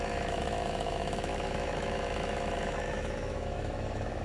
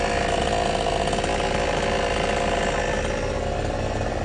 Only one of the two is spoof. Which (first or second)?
first